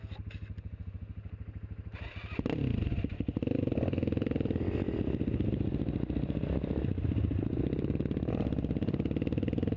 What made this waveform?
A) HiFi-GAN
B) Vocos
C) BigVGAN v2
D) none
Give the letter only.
D